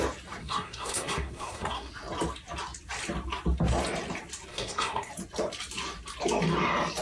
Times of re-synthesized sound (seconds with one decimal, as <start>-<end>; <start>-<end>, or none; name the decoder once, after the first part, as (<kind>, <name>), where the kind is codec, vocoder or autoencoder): 0.4-1.9 (codec, SNAC); 4.5-5.1